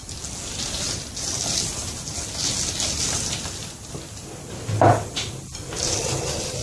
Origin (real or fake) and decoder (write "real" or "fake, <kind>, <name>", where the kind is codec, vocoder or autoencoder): real